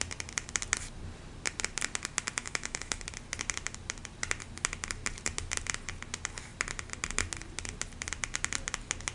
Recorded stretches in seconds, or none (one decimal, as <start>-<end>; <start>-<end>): 0.0-2.4; 3.0-9.1

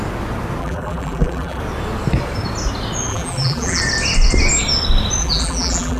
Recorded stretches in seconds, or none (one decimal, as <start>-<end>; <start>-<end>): 0.0-0.6; 1.6-3.1; 3.8-5.2

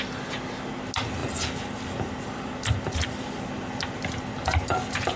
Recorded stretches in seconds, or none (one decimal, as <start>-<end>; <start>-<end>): 0.0-5.2